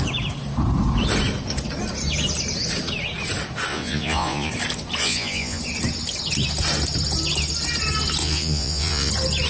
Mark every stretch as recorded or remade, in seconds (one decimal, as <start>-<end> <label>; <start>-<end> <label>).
0.0-3.7 recorded; 3.7-4.5 remade; 4.5-5.0 recorded; 5.0-5.6 remade; 5.6-8.2 recorded; 8.2-9.1 remade; 9.1-9.5 recorded